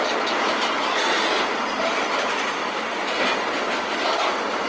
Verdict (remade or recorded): recorded